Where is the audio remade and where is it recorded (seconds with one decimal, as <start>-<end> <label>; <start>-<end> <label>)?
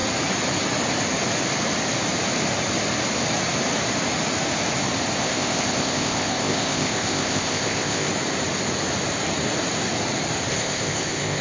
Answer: 0.0-5.2 recorded; 5.2-8.1 remade; 8.1-10.5 recorded; 10.5-11.4 remade